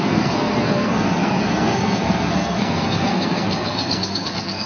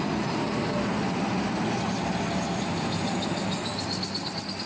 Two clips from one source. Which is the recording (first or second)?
second